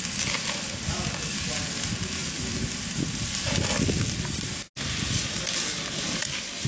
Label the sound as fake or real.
real